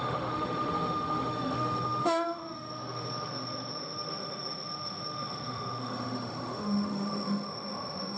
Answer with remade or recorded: remade